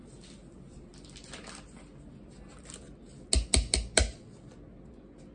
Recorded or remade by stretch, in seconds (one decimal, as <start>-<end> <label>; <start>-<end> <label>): 0.0-5.3 recorded